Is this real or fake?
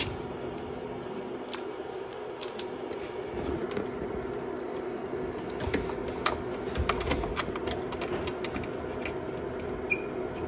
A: real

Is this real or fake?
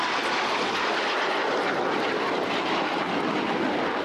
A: real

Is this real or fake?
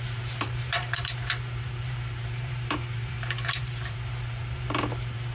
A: fake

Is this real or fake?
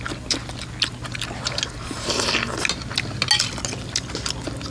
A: real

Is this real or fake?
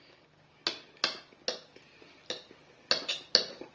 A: real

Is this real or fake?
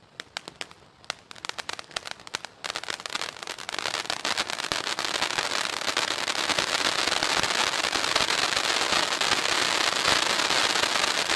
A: real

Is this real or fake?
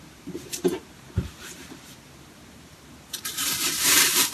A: fake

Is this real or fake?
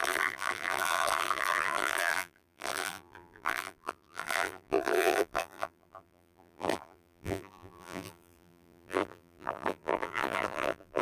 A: fake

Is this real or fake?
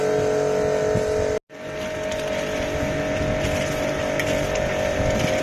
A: real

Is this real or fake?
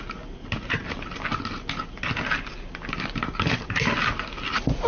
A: real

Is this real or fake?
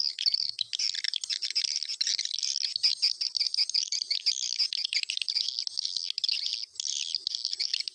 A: real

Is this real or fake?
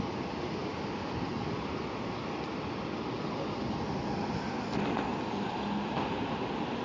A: real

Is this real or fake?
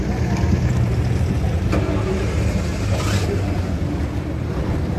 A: real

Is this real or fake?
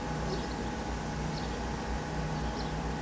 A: real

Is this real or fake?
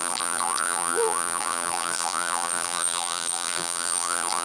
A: fake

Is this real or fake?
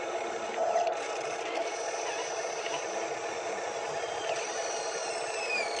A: fake